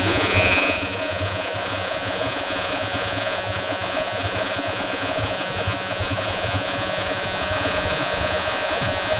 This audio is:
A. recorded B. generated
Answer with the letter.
B